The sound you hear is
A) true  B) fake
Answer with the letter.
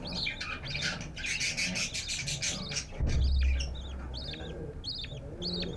A